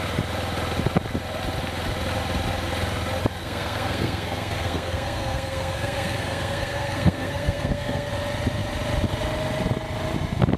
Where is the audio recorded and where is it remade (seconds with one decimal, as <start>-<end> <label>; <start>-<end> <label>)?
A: 0.0-3.4 recorded; 3.4-8.1 remade; 8.1-10.6 recorded